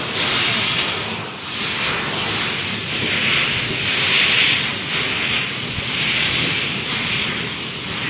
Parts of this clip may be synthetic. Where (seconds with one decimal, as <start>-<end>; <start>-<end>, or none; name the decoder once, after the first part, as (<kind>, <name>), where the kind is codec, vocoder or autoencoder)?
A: none